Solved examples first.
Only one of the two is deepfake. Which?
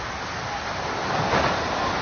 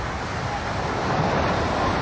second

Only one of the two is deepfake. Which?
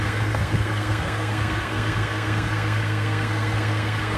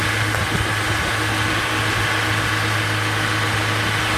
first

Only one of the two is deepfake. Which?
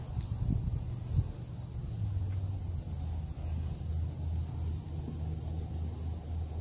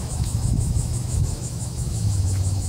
second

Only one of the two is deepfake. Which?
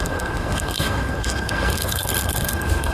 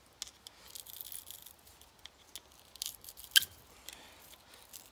first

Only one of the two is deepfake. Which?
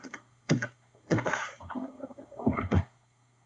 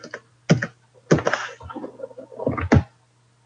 first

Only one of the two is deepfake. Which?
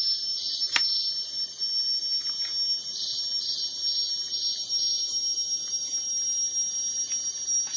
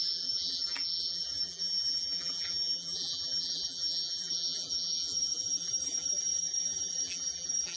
second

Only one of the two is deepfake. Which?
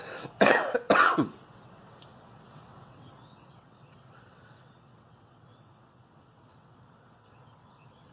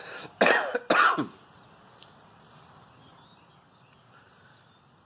first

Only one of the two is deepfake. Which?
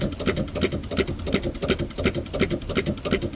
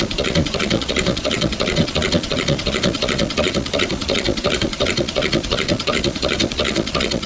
second